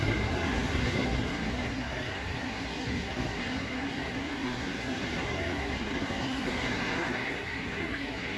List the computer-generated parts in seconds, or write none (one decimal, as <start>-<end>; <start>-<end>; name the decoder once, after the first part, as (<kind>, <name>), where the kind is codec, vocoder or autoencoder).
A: 0.0-8.4 (codec, SNAC)